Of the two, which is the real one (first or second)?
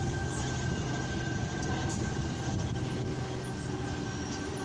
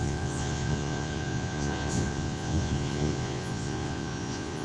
first